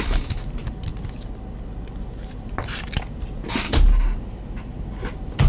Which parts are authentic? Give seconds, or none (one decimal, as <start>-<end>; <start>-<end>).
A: 0.0-4.7